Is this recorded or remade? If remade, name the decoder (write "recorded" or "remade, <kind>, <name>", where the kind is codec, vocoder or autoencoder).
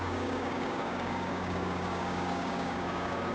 remade, codec, DAC